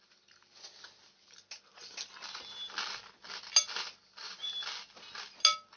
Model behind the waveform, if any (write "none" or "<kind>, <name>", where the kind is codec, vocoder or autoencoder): none